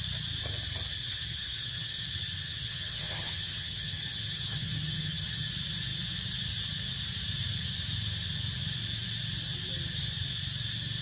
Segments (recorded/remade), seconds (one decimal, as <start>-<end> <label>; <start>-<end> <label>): 0.0-1.0 recorded; 1.0-2.0 remade; 2.0-2.4 recorded; 2.4-5.5 remade; 5.5-11.0 recorded